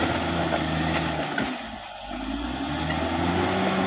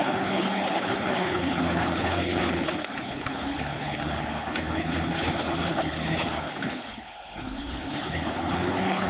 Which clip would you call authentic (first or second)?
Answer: first